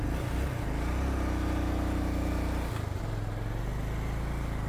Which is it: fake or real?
real